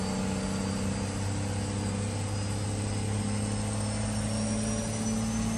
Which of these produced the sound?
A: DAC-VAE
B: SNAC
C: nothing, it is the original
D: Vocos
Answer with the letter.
C